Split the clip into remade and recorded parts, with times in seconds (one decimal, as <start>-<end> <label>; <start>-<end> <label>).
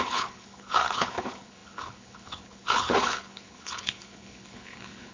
0.0-5.1 remade